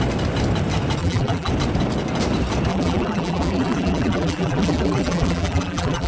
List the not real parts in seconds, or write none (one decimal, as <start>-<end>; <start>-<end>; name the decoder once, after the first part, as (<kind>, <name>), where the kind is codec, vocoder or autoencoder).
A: 1.0-1.5 (vocoder, BigVGAN v2); 2.7-6.1